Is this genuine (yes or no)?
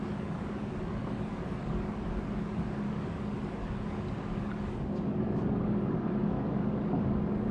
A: no